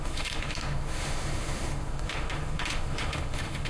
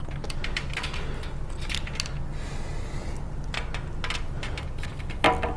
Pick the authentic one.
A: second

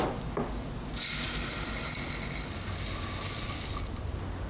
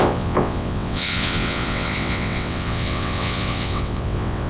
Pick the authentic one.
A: first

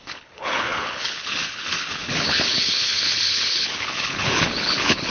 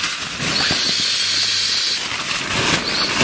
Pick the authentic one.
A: second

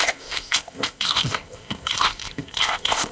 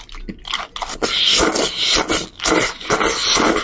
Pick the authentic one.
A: second